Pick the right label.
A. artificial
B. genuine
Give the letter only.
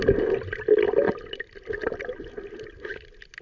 B